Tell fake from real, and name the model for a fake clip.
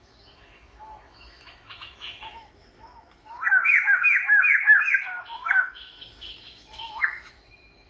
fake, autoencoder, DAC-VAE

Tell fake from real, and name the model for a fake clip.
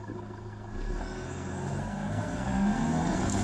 fake, codec, SNAC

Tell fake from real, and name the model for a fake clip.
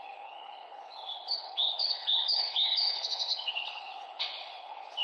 fake, codec, HILCodec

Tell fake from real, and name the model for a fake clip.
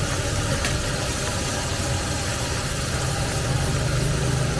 real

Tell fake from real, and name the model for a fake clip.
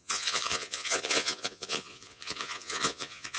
fake, vocoder, Vocos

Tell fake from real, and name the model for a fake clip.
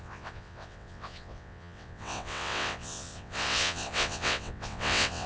fake, vocoder, WaveNeXt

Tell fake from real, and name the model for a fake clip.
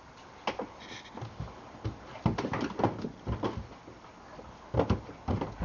real